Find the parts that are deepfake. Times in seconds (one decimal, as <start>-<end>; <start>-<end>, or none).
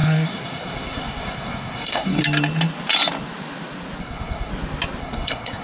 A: 0.0-2.2; 4.0-4.5; 5.0-5.6